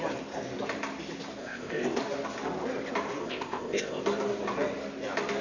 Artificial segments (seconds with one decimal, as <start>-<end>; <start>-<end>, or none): 1.4-2.0; 3.2-4.0